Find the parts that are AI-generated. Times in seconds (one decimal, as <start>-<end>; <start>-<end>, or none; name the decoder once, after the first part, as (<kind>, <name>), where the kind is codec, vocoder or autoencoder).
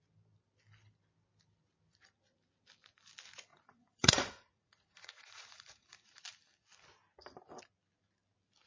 3.5-6.2 (vocoder, Vocos)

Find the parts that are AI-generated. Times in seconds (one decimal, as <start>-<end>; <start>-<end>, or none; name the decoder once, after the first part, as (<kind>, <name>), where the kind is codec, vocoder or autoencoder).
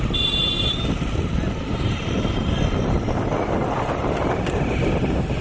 none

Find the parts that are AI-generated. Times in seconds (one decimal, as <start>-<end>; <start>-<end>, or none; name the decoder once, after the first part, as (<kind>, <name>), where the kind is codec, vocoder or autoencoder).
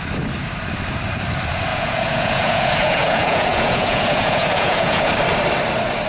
1.7-5.1 (vocoder, Vocos)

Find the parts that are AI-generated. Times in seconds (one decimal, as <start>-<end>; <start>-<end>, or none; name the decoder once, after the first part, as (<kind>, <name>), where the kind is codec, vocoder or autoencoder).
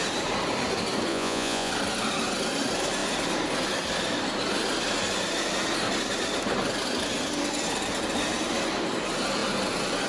1.1-1.7 (vocoder, Vocos)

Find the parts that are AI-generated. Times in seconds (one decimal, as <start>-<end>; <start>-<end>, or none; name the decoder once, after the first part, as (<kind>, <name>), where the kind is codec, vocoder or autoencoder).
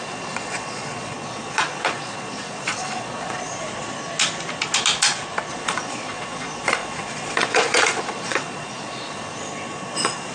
0.0-3.5 (vocoder, Vocos); 5.5-10.3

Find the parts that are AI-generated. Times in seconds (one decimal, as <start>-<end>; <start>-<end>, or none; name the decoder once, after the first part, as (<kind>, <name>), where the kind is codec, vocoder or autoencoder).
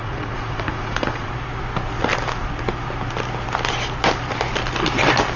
0.0-1.3 (vocoder, Vocos)